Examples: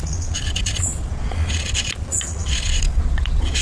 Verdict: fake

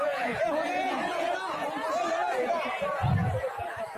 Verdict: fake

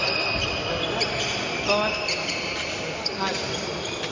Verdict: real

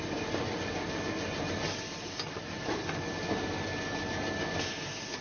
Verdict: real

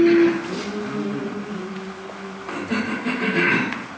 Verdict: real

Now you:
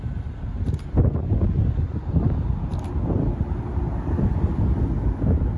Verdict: real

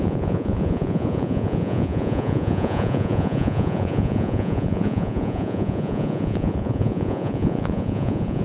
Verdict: fake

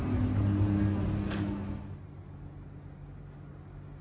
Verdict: real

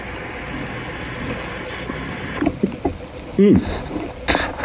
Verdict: real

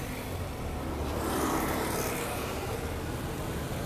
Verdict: real